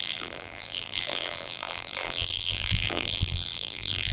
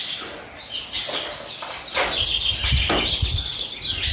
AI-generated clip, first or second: first